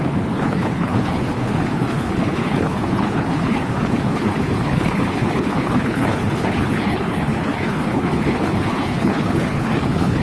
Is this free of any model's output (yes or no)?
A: no